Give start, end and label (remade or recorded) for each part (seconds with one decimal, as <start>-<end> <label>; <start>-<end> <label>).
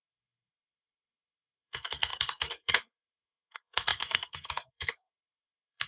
0.0-5.9 remade